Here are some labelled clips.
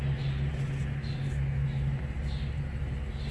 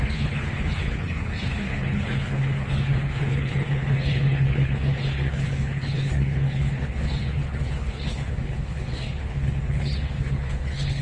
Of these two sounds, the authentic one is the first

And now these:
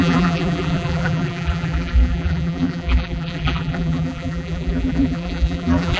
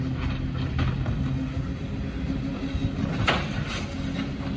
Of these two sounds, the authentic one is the second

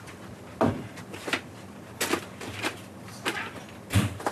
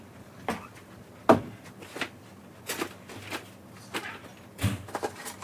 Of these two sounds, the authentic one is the second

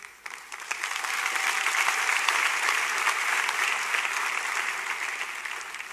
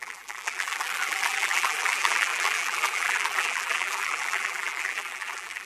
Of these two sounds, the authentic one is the first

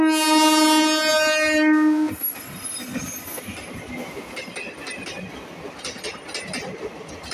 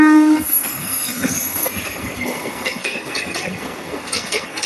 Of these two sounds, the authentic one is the first